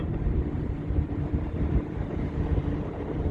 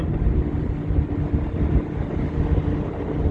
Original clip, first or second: second